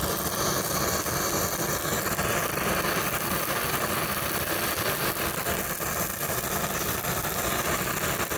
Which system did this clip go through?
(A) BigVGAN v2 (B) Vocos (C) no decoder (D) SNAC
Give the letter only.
C